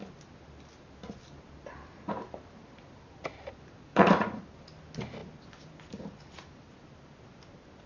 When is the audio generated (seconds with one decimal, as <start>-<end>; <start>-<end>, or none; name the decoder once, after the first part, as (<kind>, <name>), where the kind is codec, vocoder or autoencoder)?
3.9-4.4 (vocoder, Vocos)